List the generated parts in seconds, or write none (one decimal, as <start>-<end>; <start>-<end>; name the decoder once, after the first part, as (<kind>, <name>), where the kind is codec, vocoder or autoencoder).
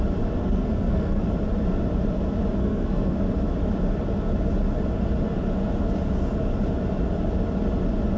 0.4-1.2 (codec, SNAC); 2.6-3.2